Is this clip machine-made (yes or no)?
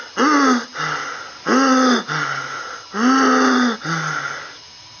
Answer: no